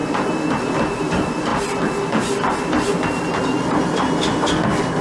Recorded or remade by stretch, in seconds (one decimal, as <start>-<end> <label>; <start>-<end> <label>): 0.0-5.0 recorded